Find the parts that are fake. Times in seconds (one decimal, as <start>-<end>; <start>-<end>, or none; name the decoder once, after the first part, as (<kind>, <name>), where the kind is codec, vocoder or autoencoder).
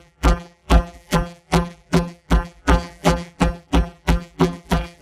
0.0-5.0 (vocoder, BigVGAN v2)